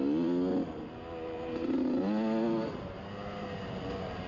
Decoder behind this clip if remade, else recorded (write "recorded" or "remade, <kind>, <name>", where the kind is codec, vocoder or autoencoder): recorded